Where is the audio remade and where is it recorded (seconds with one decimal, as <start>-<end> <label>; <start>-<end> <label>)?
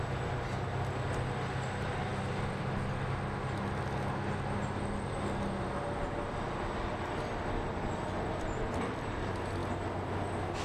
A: 0.0-10.6 recorded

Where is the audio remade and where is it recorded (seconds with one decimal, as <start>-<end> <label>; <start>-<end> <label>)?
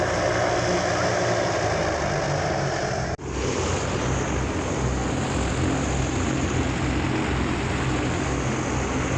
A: 0.0-9.2 recorded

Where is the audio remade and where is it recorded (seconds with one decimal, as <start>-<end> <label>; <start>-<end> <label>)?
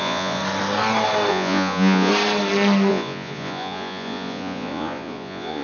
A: 0.0-0.4 remade; 0.4-1.3 recorded; 1.3-2.1 remade; 2.1-2.9 recorded; 2.9-5.6 remade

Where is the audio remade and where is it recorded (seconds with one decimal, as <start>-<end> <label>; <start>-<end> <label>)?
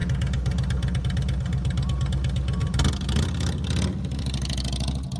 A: 0.0-2.6 recorded; 2.6-4.6 remade; 4.6-5.2 recorded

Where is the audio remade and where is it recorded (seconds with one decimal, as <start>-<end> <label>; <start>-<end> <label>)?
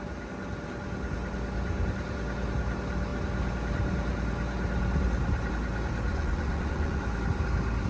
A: 0.0-6.1 recorded; 6.1-7.0 remade; 7.0-7.9 recorded